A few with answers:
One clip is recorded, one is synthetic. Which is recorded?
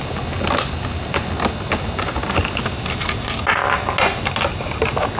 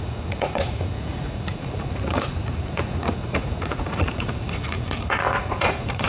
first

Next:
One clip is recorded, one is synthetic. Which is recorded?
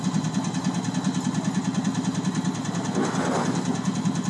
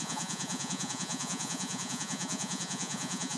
first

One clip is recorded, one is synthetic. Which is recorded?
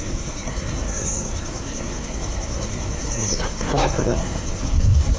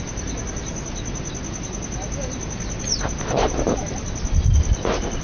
second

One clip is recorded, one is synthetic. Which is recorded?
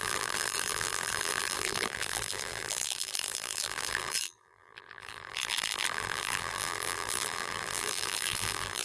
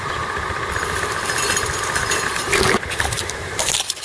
second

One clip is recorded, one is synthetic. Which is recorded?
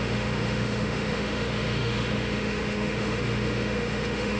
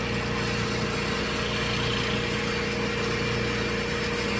second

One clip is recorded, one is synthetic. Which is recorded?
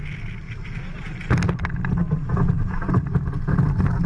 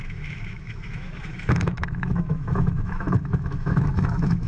first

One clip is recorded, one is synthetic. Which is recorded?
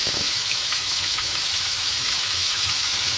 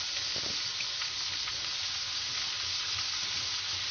second